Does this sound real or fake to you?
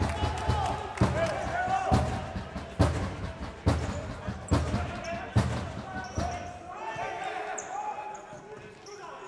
real